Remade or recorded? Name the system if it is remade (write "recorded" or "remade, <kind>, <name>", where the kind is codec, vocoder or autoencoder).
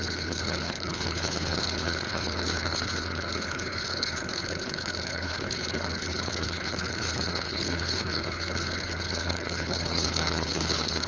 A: remade, codec, HILCodec